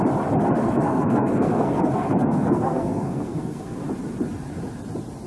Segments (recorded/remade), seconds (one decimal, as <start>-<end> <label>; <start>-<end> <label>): 0.0-0.6 recorded; 0.6-3.8 remade; 3.8-5.3 recorded